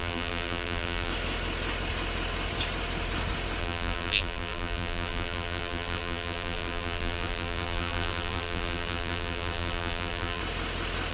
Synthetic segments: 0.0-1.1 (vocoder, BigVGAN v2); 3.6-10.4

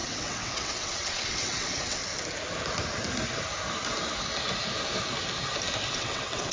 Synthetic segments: 0.0-2.0 (vocoder, WaveNeXt); 5.9-6.5

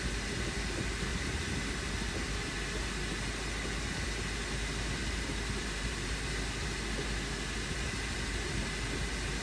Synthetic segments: 1.1-1.7 (vocoder, BigVGAN v2); 5.0-6.3

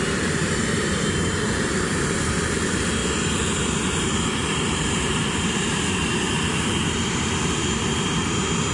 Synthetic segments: 0.0-3.0 (vocoder, BigVGAN v2); 4.0-8.7

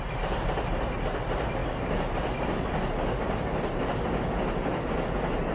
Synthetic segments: none

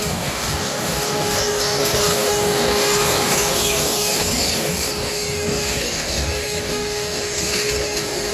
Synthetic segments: 0.0-8.3 (codec, DAC)

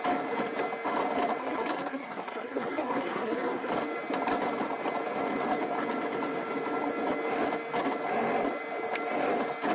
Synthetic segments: 1.4-3.7 (codec, SNAC)

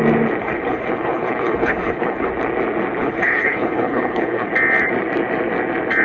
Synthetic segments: 0.4-2.3 (codec, HILCodec); 3.0-4.5